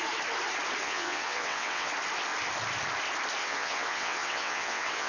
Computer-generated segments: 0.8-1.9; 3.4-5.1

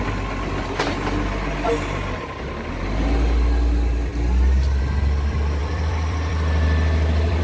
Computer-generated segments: 5.6-7.4

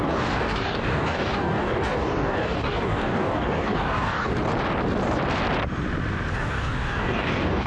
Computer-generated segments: 0.0-4.3; 6.3-7.7

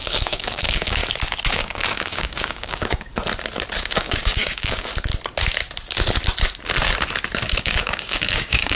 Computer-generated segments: 0.0-1.0; 1.5-3.1; 3.8-4.9; 7.6-8.7

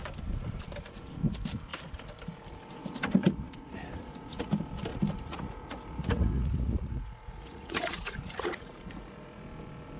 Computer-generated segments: 2.8-4.5; 4.9-9.4

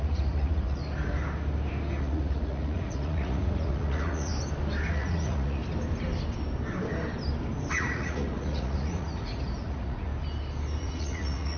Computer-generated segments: 0.0-0.8; 2.0-4.3; 4.9-5.6; 7.7-10.1; 10.8-11.6

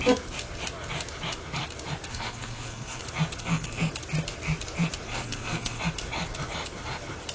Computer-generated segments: 2.1-3.0; 3.4-3.9; 5.1-5.8

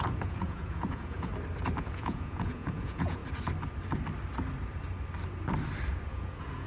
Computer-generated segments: 0.0-1.3; 1.8-3.2; 6.1-6.7